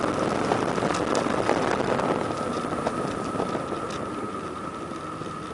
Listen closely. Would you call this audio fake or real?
real